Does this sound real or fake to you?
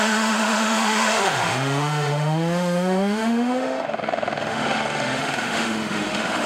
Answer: fake